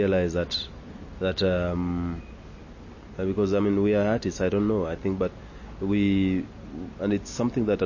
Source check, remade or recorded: recorded